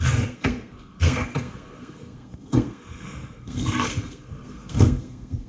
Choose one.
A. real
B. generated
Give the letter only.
B